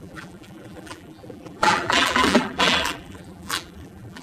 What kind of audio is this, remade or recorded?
remade